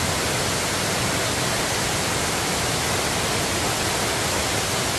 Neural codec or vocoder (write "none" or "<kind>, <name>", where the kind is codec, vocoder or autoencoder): none